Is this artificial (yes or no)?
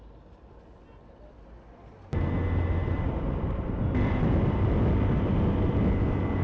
no